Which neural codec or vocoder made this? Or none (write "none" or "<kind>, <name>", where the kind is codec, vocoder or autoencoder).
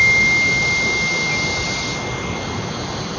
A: none